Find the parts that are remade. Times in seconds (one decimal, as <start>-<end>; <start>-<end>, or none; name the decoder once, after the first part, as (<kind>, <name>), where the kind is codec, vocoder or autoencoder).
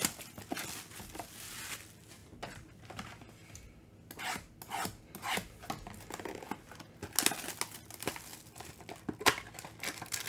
none